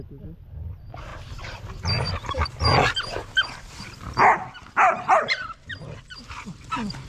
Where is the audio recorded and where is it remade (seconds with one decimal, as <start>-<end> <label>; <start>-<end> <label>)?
0.0-7.1 recorded